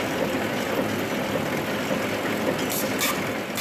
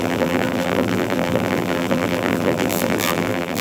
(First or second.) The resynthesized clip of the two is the second